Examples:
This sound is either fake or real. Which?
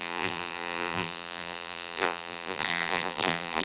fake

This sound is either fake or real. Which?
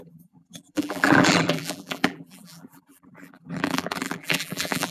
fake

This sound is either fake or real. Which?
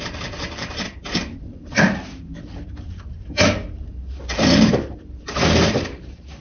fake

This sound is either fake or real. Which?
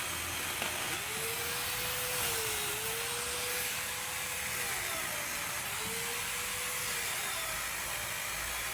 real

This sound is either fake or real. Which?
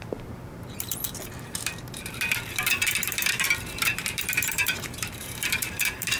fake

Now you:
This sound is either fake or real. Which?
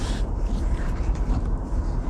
fake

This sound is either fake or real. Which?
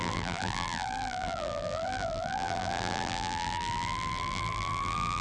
fake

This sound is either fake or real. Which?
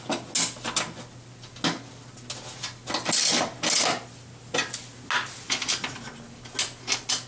real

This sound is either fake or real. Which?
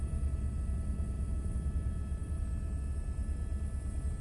real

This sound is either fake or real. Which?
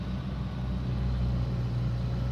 real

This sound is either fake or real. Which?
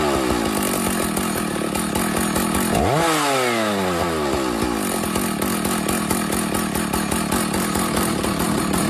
real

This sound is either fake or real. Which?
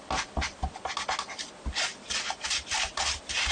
real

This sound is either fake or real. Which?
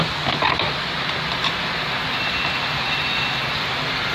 real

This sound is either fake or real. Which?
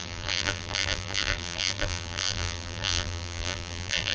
fake